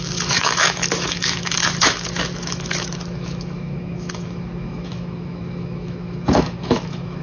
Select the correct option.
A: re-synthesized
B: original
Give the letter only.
A